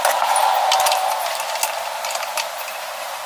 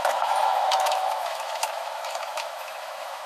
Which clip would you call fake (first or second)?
second